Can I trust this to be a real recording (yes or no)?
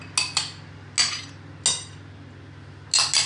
yes